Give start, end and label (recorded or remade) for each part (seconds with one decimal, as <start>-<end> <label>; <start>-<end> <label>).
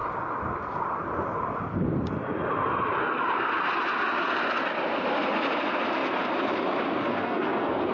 0.0-7.0 recorded; 7.0-7.9 remade